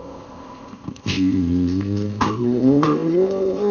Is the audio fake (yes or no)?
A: yes